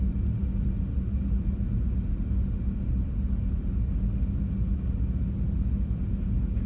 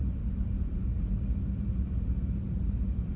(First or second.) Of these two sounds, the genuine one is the first